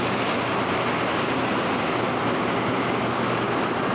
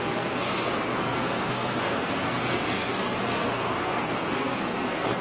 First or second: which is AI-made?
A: second